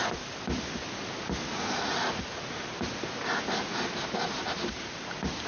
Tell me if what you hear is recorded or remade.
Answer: recorded